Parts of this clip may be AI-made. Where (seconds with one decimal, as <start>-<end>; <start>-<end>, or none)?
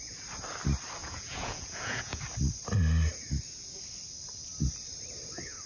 1.0-2.2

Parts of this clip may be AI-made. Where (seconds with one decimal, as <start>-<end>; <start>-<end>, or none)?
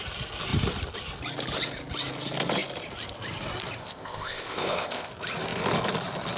3.8-5.1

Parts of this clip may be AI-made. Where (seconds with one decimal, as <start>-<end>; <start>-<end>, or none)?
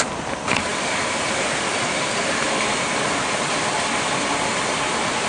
none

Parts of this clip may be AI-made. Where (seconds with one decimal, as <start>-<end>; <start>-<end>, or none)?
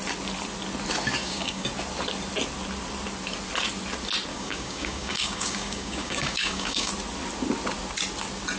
1.2-1.7; 4.3-6.9